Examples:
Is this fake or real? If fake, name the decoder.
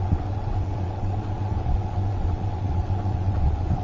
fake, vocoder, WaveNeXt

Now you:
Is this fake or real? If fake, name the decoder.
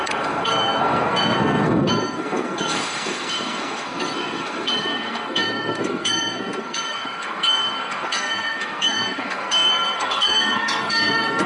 fake, codec, SNAC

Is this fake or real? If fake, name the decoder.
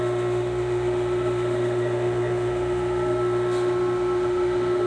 fake, autoencoder, DAC-VAE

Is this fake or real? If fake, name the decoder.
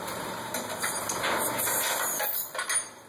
real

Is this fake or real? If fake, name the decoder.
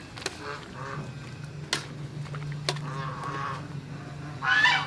real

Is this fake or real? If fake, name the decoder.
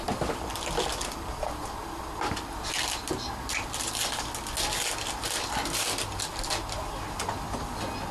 real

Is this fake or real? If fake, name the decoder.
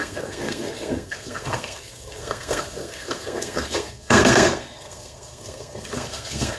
fake, codec, SNAC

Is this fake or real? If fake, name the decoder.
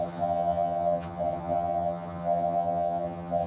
fake, vocoder, HiFi-GAN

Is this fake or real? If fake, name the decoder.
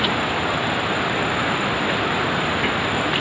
real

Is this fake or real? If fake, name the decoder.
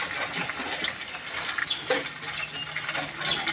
real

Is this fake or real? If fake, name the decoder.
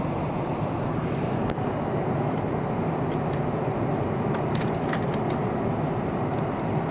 real